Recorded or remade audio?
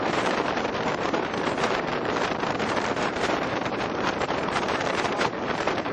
remade